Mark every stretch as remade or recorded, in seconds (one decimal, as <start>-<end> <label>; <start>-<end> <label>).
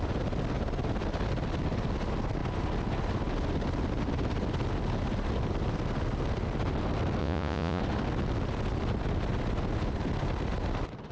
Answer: 0.0-7.2 recorded; 7.2-7.8 remade; 7.8-11.1 recorded